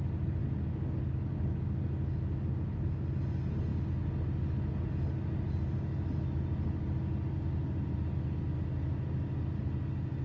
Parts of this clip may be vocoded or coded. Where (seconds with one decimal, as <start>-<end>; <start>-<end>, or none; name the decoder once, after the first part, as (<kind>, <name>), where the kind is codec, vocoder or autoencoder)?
none

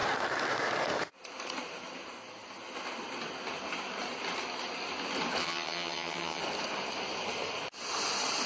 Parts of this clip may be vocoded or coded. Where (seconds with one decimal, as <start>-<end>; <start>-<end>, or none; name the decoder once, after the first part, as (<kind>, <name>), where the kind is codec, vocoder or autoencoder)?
5.4-6.4 (vocoder, HiFi-GAN)

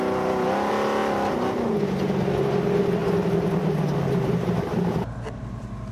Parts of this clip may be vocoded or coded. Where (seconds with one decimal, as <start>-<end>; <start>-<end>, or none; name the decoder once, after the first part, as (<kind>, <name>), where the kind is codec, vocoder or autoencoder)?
none

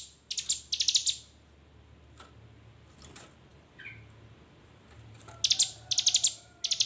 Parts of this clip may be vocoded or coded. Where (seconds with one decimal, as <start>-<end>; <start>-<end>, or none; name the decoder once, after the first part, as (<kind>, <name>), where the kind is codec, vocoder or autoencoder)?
none

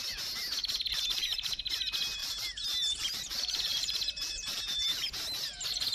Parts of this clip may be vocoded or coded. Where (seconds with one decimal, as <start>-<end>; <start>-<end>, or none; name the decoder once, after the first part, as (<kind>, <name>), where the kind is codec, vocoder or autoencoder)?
0.6-1.6 (vocoder, BigVGAN v2); 2.2-5.1